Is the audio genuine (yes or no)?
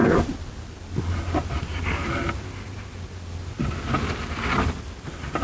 yes